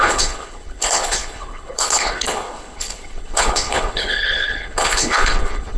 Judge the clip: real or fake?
fake